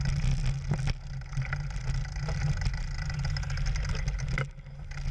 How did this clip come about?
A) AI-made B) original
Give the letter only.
B